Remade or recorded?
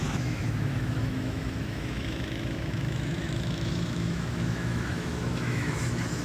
remade